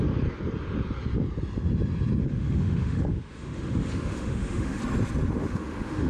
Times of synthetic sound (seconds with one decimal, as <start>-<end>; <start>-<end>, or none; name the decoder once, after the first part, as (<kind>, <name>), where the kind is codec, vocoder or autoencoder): 2.2-4.8 (autoencoder, DAC-VAE); 5.4-6.1